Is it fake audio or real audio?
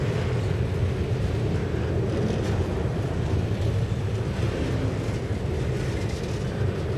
real